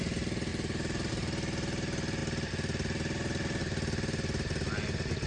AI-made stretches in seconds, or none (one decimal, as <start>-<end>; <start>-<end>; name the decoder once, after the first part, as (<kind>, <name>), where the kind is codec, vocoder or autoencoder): none